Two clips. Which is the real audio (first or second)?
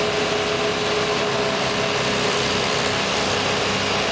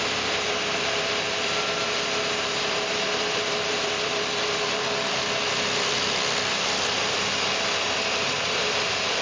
first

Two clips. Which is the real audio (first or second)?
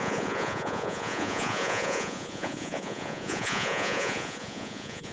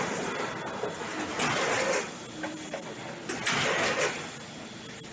second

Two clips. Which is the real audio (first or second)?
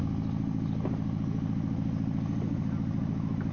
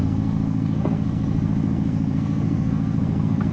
first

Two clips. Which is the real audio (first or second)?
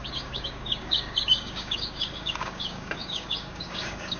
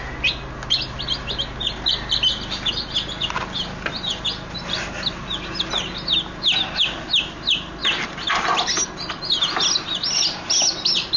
second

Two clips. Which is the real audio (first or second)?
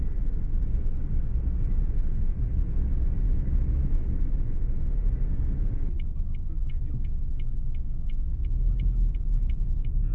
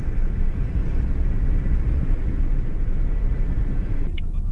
first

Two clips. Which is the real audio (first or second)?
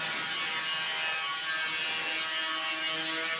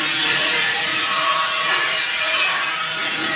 first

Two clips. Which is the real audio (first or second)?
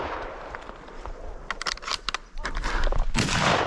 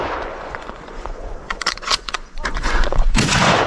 first